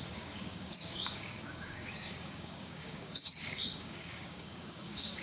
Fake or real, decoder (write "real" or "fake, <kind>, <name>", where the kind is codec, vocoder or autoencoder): fake, codec, DAC